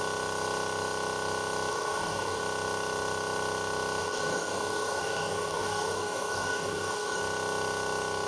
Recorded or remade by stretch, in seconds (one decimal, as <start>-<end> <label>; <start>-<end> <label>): 0.0-1.7 recorded; 1.7-2.4 remade; 2.4-4.0 recorded; 4.0-7.2 remade; 7.2-8.3 recorded